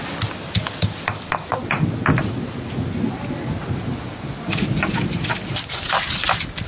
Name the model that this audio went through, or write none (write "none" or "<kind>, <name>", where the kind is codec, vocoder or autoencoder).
none